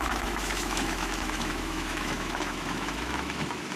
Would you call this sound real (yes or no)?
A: no